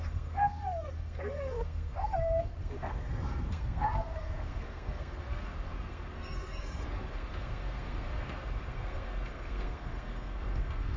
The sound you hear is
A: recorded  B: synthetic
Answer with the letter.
B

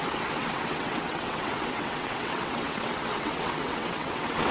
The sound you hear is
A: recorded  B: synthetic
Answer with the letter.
B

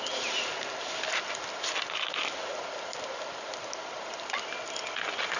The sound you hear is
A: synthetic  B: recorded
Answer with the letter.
B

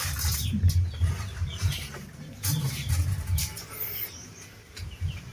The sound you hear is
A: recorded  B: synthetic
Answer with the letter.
B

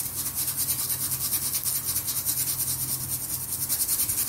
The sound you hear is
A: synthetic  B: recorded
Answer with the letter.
B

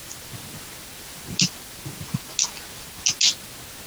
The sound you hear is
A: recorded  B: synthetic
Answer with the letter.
A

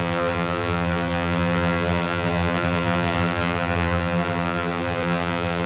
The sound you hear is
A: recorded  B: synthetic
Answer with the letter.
B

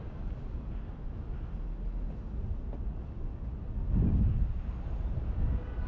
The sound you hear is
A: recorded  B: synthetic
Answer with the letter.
A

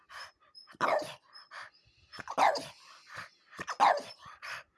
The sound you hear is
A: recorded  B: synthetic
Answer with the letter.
A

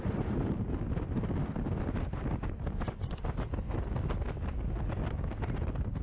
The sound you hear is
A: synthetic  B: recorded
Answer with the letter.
B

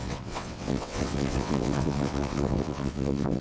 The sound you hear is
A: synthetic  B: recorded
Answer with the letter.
A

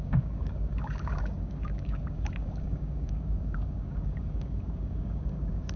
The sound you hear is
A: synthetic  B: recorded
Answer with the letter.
A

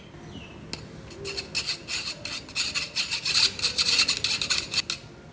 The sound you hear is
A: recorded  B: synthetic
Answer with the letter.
A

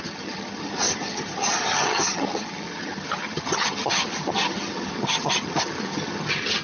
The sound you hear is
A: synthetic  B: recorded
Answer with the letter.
A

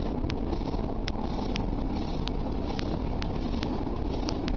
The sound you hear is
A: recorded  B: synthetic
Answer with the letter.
A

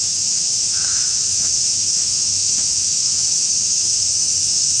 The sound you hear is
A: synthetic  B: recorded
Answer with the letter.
A